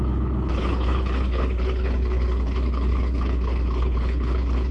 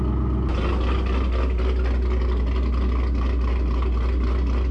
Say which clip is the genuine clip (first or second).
second